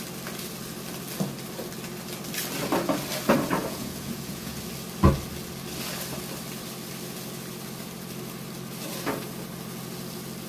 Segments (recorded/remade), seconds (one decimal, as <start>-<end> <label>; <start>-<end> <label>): 0.0-3.6 recorded; 3.6-4.6 remade; 4.6-10.5 recorded